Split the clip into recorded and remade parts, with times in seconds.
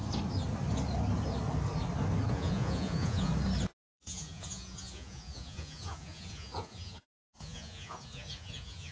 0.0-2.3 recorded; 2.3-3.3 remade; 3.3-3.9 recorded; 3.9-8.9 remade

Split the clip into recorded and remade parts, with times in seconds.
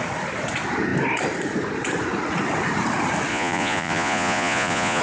0.0-3.3 recorded; 3.3-5.0 remade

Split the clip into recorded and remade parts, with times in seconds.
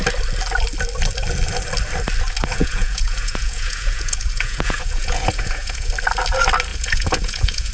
0.0-2.4 recorded; 2.4-5.9 remade; 5.9-6.7 recorded; 6.7-7.7 remade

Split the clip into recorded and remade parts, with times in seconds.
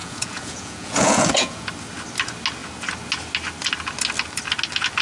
0.0-1.7 remade; 1.7-5.0 recorded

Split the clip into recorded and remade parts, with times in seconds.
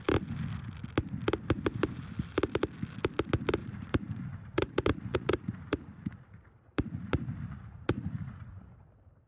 0.0-3.6 recorded; 3.6-8.8 remade; 8.8-9.3 recorded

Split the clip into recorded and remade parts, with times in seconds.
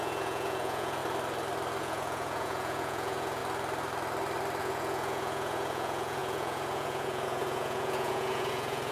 0.0-1.0 remade; 1.0-1.8 recorded; 1.8-3.4 remade; 3.4-4.6 recorded; 4.6-8.9 remade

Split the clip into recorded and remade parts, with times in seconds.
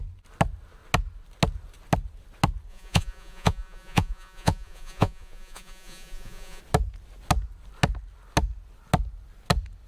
0.0-2.7 recorded; 2.7-6.6 remade; 6.6-9.9 recorded